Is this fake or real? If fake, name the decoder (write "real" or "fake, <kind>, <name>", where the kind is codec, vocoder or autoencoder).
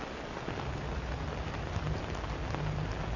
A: real